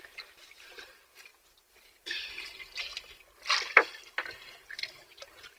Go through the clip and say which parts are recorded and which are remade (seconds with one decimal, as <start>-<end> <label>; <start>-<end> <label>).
0.0-1.3 remade; 1.3-4.7 recorded; 4.7-5.6 remade